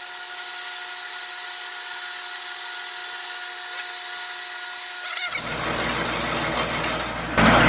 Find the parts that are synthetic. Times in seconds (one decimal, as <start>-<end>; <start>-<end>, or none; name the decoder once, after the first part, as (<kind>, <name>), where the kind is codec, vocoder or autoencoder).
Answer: none